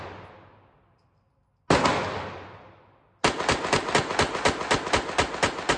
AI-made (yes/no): no